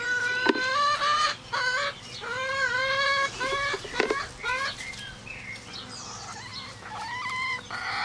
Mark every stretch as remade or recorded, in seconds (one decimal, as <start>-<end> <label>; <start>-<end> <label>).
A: 0.0-8.0 recorded

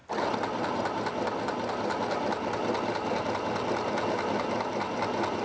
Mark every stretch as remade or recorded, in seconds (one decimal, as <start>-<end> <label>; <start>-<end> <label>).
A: 0.0-5.4 recorded

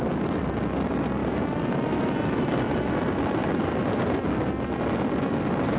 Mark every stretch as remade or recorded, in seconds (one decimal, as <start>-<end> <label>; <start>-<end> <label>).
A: 0.0-5.8 recorded

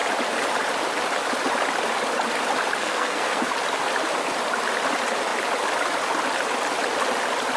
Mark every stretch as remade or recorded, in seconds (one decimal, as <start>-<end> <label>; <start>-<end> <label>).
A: 0.0-2.8 recorded; 2.8-3.5 remade; 3.5-7.6 recorded

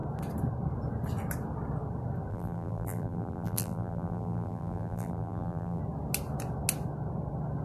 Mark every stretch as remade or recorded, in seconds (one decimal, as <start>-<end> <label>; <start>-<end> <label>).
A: 0.0-2.3 recorded; 2.3-5.8 remade; 5.8-7.6 recorded